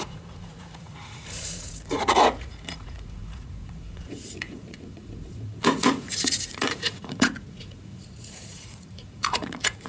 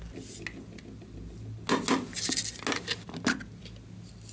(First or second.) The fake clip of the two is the first